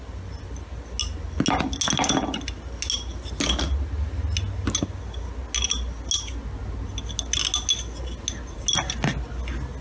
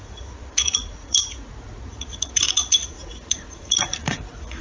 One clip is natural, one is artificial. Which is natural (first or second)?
first